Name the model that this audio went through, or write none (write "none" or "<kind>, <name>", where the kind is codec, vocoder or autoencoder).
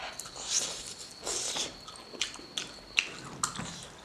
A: none